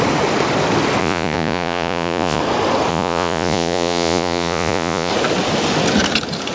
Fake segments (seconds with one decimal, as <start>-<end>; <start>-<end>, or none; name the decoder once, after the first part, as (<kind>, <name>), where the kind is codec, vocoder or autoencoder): 1.0-2.4 (vocoder, Vocos); 2.9-5.1